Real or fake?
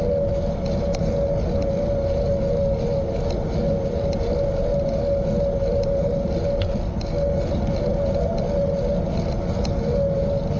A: real